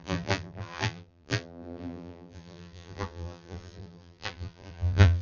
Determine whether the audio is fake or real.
fake